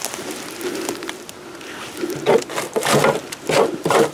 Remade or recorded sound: recorded